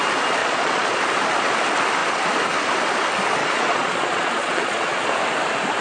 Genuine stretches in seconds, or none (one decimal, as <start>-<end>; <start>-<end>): 0.0-0.4; 1.0-3.4; 5.1-5.8